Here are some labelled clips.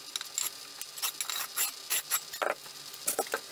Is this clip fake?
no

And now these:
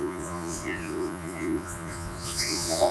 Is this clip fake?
yes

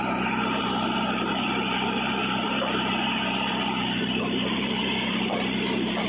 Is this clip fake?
yes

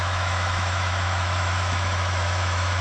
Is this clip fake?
yes